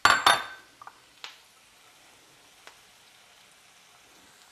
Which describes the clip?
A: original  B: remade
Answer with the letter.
A